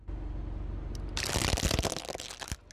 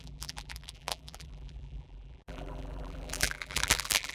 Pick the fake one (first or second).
second